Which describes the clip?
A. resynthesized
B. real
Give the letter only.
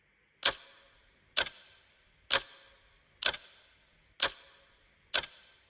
B